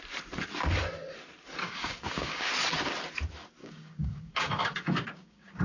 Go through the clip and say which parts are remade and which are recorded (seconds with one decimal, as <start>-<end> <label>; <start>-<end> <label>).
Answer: 0.0-1.6 recorded; 1.6-2.5 remade; 2.5-3.6 recorded; 3.6-5.6 remade